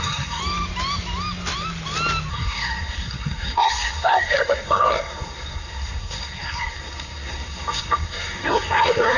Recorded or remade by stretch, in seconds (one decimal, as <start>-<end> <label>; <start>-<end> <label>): 0.0-0.4 remade; 0.4-2.3 recorded; 2.3-9.2 remade